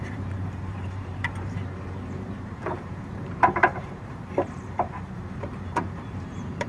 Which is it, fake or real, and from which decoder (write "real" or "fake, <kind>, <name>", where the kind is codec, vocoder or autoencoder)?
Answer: fake, vocoder, BigVGAN v2